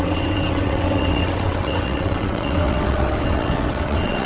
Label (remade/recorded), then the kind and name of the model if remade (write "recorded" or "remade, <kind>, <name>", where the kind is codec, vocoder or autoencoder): remade, vocoder, WaveNeXt